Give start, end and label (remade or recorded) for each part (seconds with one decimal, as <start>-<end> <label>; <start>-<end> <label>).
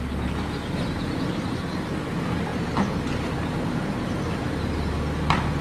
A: 0.0-2.5 recorded; 2.5-4.9 remade; 4.9-5.6 recorded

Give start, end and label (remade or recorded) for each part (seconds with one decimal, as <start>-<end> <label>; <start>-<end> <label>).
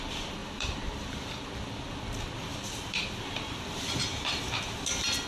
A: 0.0-0.4 recorded; 0.4-1.5 remade; 1.5-2.5 recorded; 2.5-4.6 remade; 4.6-5.3 recorded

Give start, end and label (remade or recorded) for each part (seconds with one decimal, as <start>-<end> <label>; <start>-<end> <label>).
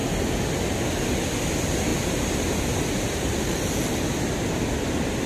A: 0.0-1.9 recorded; 1.9-3.3 remade; 3.3-5.3 recorded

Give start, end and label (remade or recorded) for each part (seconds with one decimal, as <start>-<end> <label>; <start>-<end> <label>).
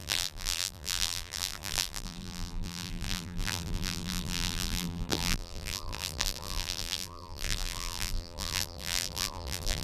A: 0.0-9.8 remade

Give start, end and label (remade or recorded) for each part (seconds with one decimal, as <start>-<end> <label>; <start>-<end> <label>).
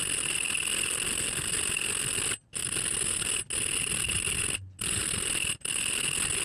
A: 0.0-6.4 recorded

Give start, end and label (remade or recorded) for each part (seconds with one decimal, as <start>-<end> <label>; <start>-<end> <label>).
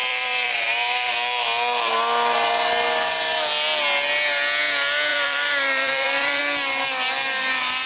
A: 0.0-1.1 remade; 1.1-5.1 recorded; 5.1-6.4 remade; 6.4-7.9 recorded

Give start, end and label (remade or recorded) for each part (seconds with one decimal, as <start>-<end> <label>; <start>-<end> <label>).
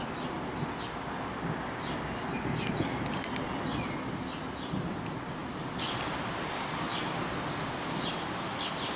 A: 0.0-9.0 recorded